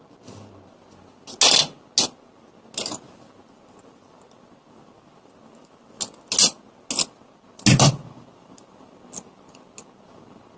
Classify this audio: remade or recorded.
recorded